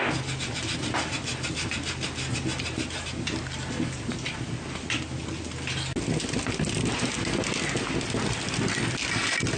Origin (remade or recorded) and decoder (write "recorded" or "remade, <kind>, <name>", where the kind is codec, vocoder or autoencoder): recorded